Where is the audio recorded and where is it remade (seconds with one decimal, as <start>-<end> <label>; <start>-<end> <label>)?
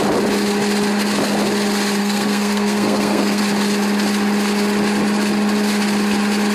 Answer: 0.0-2.0 recorded; 2.0-3.4 remade; 3.4-6.5 recorded